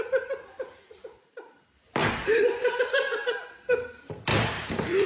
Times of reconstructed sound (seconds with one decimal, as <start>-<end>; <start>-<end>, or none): 0.0-5.1